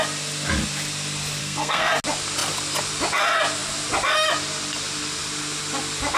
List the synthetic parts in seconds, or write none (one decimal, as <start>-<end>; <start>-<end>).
1.4-1.9